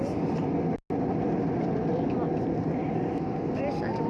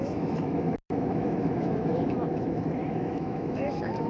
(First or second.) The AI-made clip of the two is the second